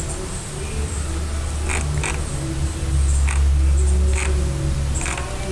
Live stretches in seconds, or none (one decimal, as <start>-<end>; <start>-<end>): 0.0-5.5